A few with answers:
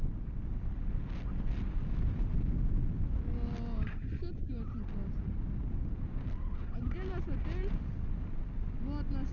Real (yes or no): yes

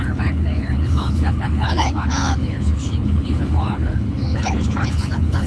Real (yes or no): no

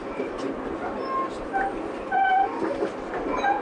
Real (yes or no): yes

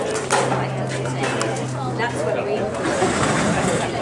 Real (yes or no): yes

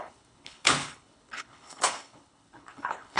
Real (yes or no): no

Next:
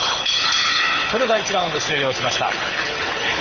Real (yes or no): no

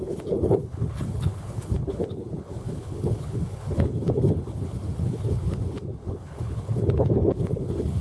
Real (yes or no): no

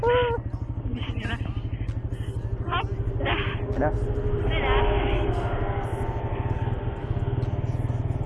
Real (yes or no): yes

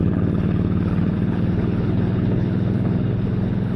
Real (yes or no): no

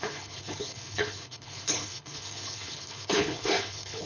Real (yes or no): no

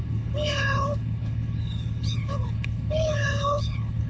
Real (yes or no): no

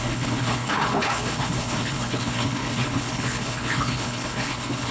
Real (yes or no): no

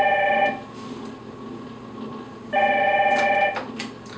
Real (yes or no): yes